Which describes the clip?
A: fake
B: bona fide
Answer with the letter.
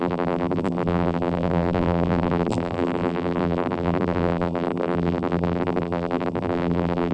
A